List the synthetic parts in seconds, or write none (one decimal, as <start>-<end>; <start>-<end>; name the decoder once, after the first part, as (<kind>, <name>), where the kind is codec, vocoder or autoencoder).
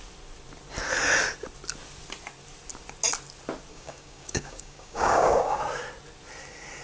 3.7-5.6 (codec, DAC)